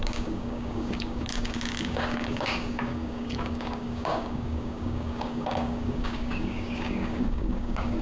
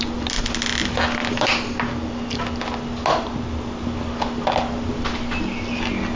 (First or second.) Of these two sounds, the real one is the second